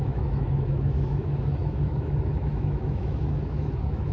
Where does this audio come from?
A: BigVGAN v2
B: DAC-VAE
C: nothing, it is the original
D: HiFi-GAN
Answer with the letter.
B